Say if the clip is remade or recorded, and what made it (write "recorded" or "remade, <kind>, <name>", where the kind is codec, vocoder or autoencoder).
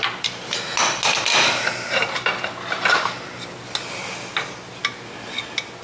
recorded